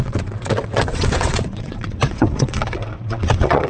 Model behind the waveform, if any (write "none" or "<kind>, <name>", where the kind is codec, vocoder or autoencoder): vocoder, WaveNeXt